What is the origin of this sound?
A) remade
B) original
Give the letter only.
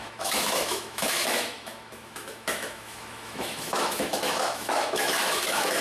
A